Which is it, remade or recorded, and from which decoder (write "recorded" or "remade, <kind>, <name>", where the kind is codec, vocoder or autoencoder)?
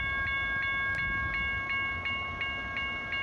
recorded